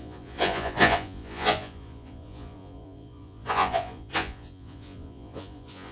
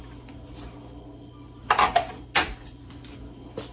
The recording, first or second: second